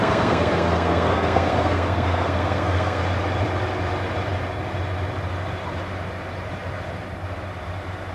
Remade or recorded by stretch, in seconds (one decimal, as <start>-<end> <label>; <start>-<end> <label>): 0.0-3.0 remade; 3.0-8.1 recorded